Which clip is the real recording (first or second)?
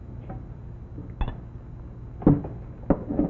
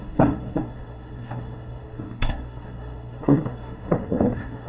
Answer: first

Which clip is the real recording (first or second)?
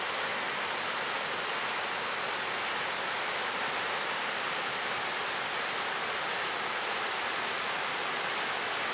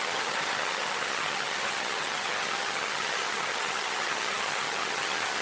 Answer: first